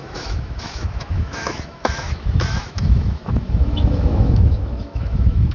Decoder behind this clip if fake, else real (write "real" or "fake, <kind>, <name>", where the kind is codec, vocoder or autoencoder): fake, autoencoder, DAC-VAE